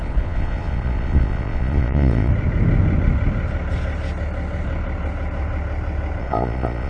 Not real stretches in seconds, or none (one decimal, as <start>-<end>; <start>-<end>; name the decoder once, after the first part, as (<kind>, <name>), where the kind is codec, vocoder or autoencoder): 0.0-2.3 (vocoder, Vocos); 6.2-6.9